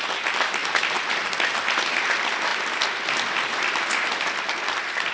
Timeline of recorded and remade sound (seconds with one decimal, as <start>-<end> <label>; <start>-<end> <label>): 0.0-5.1 recorded